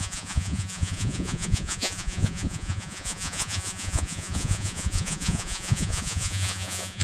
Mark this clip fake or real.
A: fake